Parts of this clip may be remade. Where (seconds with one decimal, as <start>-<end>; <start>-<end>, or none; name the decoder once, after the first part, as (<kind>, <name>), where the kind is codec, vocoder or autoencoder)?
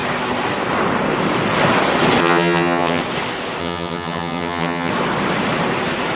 2.2-3.0 (vocoder, HiFi-GAN); 3.6-4.9